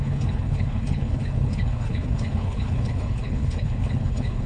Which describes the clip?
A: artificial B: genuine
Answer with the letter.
A